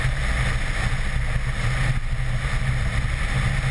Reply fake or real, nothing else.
real